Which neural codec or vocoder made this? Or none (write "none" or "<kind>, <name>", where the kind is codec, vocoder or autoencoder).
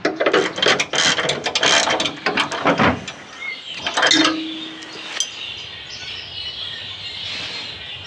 none